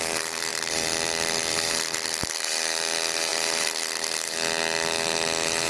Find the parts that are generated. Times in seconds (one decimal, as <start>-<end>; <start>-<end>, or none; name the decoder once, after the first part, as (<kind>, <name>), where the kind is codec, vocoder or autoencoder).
none